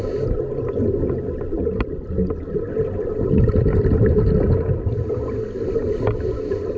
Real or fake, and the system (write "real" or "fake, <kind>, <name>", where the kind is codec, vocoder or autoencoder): real